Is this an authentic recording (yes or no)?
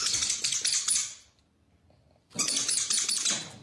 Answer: yes